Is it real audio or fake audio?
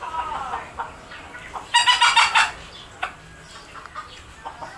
real